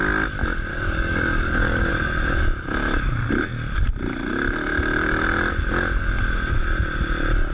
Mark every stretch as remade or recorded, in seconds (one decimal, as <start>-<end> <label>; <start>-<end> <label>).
0.0-0.7 recorded; 0.7-1.9 remade; 1.9-7.5 recorded